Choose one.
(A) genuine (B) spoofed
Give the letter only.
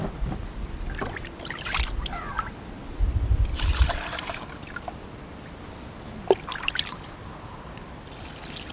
A